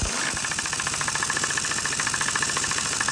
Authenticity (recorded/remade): recorded